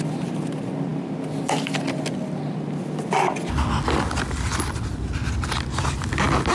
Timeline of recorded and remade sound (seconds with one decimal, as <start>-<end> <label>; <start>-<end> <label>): 0.0-6.5 recorded